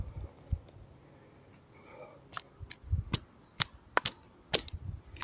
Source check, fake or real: real